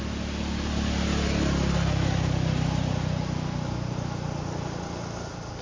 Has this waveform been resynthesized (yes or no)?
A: no